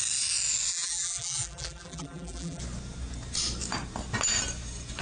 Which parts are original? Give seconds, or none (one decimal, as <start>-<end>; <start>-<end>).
0.0-0.7; 2.6-5.0